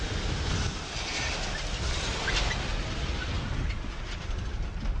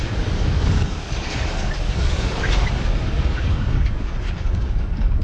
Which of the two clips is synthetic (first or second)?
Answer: second